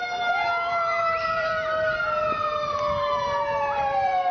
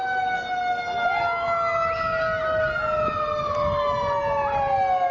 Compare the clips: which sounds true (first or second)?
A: second